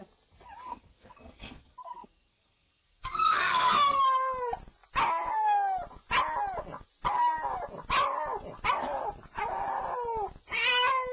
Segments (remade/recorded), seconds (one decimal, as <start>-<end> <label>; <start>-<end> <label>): 0.0-0.7 recorded; 0.7-4.0 remade; 4.0-11.1 recorded